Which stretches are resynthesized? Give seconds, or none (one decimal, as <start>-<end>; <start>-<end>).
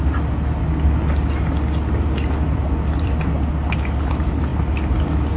none